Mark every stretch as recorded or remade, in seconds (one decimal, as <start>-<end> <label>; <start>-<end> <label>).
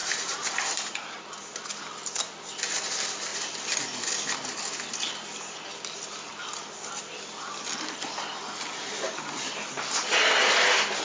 0.0-1.2 remade; 1.2-11.0 recorded